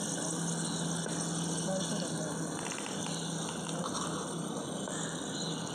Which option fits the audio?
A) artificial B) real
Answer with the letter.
B